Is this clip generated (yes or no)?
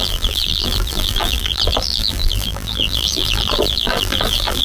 yes